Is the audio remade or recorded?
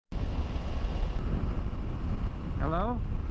recorded